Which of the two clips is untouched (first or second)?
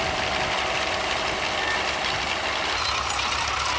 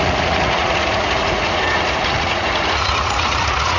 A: first